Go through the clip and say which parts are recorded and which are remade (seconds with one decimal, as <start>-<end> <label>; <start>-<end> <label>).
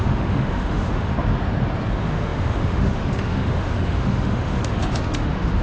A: 0.0-1.1 remade; 1.1-1.9 recorded; 1.9-5.6 remade